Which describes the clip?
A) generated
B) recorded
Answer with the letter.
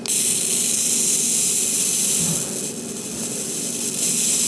B